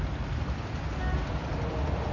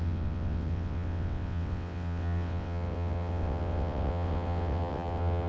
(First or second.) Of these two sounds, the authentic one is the first